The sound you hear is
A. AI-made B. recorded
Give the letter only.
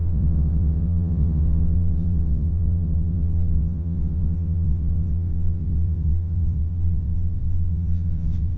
A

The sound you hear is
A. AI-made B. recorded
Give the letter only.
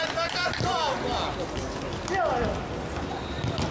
B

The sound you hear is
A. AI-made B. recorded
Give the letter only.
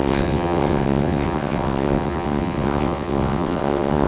A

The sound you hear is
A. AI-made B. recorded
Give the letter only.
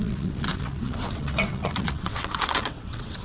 A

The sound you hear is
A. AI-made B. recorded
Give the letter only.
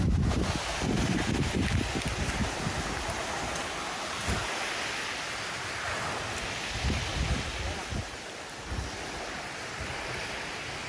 B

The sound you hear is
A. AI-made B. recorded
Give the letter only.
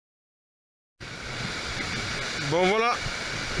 B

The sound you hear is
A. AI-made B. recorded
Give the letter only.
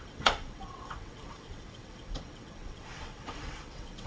A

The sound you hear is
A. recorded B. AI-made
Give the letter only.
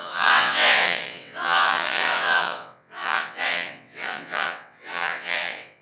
B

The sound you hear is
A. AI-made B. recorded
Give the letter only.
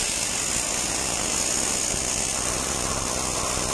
B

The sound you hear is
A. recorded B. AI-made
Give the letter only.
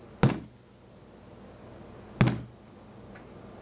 A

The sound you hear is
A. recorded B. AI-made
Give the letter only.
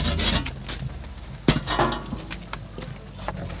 A